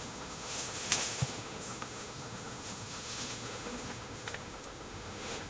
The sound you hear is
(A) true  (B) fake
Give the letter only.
B